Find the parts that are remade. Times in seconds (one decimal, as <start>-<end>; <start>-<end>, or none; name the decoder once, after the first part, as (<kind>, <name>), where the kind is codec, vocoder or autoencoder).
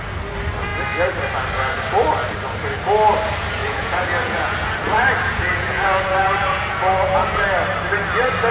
3.6-7.4 (vocoder, Vocos)